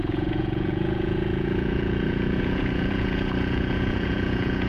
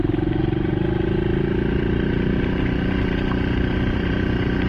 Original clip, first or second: second